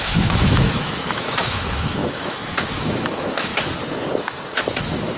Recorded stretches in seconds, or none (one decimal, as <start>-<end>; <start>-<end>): 3.5-4.8

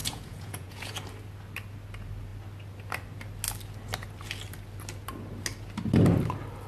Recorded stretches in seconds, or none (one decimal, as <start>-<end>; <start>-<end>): 0.9-6.7

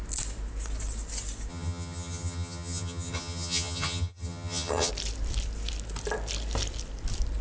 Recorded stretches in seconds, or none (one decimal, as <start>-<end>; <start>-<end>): 0.0-1.5; 4.9-7.4

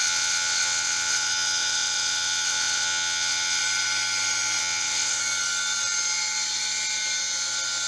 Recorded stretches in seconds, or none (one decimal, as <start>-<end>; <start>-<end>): 3.6-4.6; 5.2-7.9

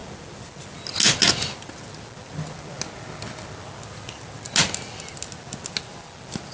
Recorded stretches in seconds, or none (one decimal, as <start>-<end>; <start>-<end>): 0.0-6.5